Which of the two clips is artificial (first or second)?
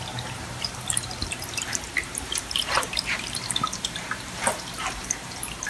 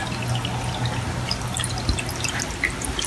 first